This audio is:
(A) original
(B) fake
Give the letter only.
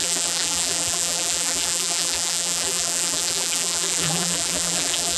B